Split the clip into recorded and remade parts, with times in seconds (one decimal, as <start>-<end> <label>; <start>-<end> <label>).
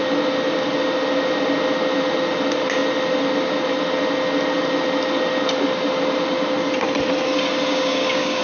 0.0-7.7 recorded; 7.7-8.4 remade